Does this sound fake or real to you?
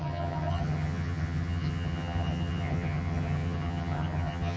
fake